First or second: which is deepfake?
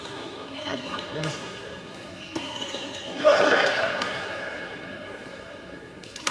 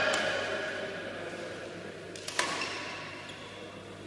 first